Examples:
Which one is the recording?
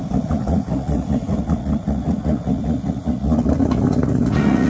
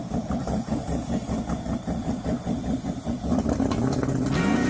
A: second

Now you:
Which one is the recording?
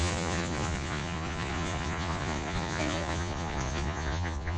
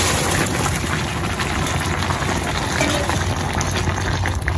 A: second